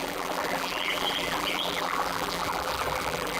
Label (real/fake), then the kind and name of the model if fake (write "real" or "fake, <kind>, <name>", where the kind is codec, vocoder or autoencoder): fake, vocoder, BigVGAN v2